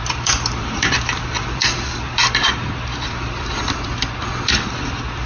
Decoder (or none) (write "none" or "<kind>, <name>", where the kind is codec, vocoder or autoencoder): vocoder, BigVGAN v2